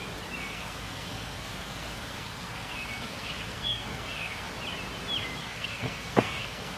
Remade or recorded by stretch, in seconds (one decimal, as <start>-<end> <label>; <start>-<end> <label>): 0.0-0.4 recorded; 0.4-4.5 remade; 4.5-5.4 recorded; 5.4-6.8 remade